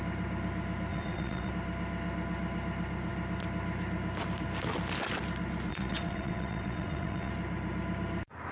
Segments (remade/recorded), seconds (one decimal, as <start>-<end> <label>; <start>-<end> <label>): 0.0-0.9 recorded; 0.9-1.5 remade; 1.5-5.7 recorded; 5.7-7.3 remade; 7.3-8.5 recorded